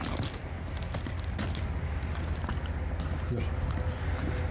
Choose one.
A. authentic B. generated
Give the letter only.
A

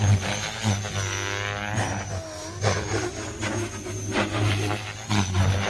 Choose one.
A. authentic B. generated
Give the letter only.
A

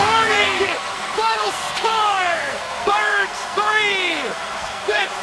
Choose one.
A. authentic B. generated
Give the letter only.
B